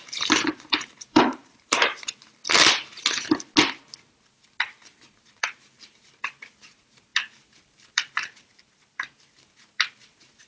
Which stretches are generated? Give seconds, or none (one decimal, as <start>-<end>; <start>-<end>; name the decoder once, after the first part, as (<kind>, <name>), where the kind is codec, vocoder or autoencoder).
0.0-2.4 (vocoder, BigVGAN v2); 5.2-10.5

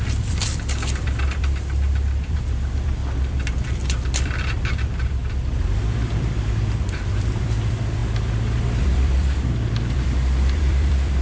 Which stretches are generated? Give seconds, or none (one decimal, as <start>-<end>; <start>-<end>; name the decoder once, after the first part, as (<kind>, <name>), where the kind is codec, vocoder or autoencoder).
0.0-3.0 (vocoder, BigVGAN v2); 3.5-5.2; 5.8-8.0; 8.8-11.2